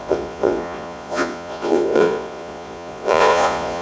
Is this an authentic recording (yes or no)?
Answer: no